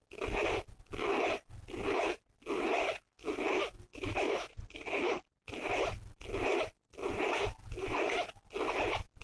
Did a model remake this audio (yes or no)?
no